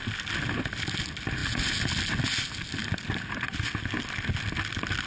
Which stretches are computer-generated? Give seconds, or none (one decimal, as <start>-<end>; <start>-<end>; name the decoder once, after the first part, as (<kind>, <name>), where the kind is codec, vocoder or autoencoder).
none

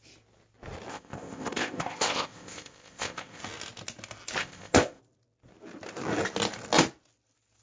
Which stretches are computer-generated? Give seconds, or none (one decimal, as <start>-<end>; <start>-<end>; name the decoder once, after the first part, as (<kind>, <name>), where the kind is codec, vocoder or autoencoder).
0.9-3.4 (codec, ZipCodec); 4.4-5.0

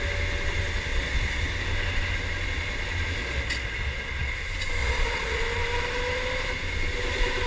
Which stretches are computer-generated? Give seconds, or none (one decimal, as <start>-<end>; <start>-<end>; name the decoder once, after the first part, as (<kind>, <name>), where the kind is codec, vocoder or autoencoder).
0.9-1.5 (vocoder, Vocos); 3.2-4.3; 4.8-5.4